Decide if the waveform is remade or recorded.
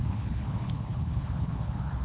remade